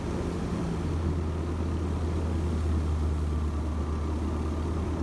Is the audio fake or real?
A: real